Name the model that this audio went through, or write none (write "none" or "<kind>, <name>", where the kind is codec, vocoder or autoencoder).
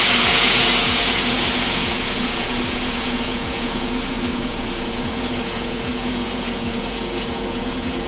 vocoder, Vocos